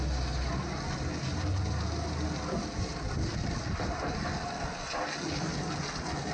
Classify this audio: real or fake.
real